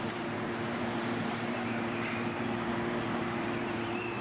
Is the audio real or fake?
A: fake